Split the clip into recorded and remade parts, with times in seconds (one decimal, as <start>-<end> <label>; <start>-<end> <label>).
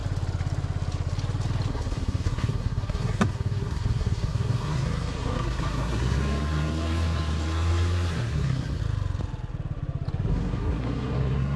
0.0-1.7 recorded; 1.7-8.8 remade; 8.8-10.3 recorded; 10.3-11.6 remade